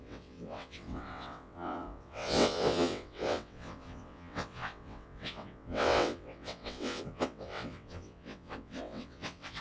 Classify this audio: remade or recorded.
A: remade